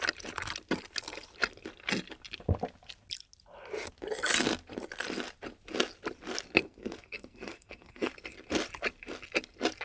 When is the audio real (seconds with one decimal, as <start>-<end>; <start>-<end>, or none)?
0.0-6.6; 8.1-9.8